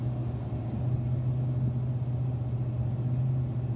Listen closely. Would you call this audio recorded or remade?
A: recorded